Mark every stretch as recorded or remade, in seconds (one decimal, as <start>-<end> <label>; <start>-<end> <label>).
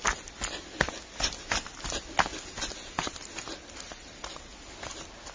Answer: 0.0-5.3 recorded